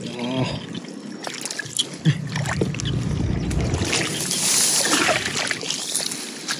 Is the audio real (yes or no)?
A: yes